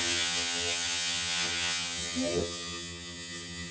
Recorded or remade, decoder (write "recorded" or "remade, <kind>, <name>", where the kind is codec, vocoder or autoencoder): remade, vocoder, HiFi-GAN